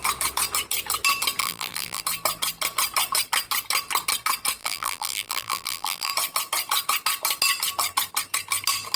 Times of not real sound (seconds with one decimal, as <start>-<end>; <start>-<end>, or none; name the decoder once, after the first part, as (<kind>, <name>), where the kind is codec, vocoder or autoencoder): 1.4-2.0 (vocoder, BigVGAN v2); 4.6-6.1